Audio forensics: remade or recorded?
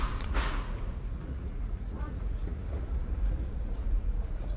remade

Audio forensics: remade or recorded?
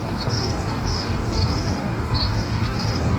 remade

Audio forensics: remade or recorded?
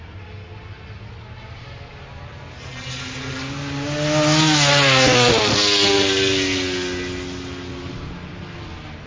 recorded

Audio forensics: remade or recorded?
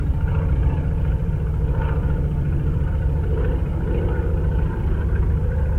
remade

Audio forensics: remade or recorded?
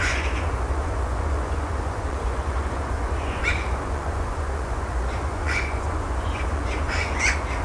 remade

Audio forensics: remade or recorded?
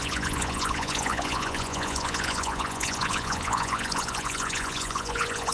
remade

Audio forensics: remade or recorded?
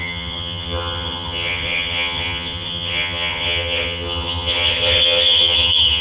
remade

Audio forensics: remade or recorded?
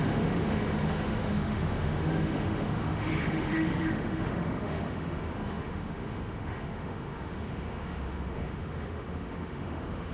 remade